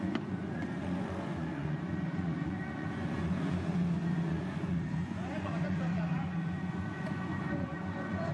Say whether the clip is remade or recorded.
remade